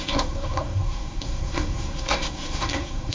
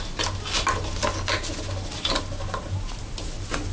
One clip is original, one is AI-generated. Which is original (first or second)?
second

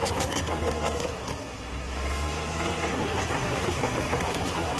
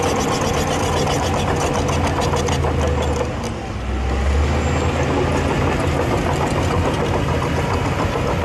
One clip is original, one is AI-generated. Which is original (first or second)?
second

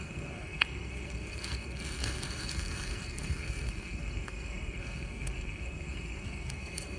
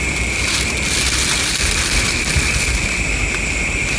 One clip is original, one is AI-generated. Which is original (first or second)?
second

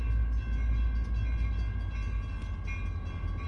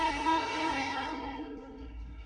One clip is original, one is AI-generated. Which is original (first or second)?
first